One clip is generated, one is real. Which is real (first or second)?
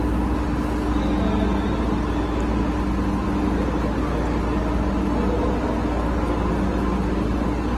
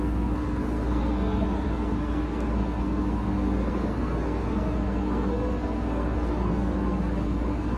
first